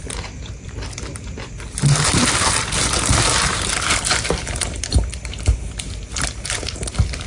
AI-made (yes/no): yes